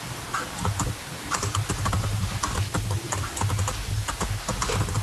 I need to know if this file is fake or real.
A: real